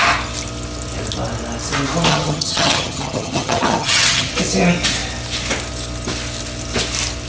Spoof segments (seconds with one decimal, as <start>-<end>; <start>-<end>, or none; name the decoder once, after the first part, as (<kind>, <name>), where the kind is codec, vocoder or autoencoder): 2.1-4.3 (vocoder, HiFi-GAN)